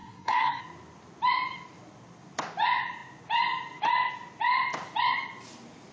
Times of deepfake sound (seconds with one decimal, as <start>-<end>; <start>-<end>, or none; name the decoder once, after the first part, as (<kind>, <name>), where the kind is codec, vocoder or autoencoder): 0.0-0.6 (codec, SNAC)